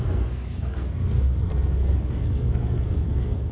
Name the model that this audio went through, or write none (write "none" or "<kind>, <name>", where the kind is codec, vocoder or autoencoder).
codec, SNAC